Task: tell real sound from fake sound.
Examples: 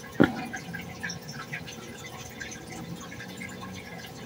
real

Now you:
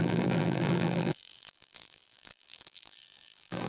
fake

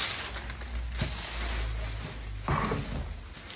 real